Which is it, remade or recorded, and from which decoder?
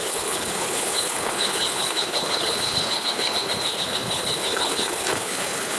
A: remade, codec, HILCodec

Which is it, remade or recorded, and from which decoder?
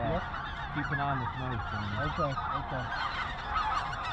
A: recorded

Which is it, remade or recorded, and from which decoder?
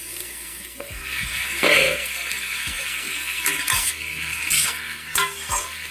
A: remade, codec, SNAC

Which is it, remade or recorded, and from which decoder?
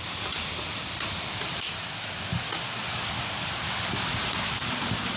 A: recorded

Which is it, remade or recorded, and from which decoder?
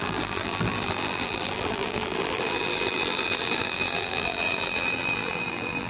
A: remade, vocoder, BigVGAN v2